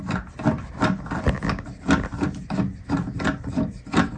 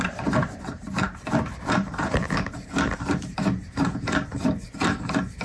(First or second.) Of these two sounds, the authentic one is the first